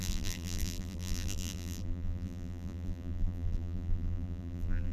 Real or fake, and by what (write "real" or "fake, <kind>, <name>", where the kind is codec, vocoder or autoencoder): fake, vocoder, BigVGAN v2